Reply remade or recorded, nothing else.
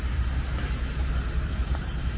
remade